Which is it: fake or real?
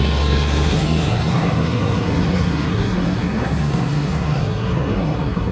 fake